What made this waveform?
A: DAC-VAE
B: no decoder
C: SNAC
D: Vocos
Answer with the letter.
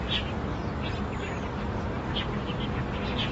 B